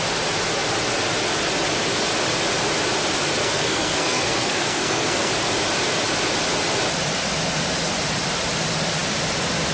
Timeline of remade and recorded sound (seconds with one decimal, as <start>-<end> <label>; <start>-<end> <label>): 0.0-3.4 recorded; 3.4-5.3 remade; 5.3-9.7 recorded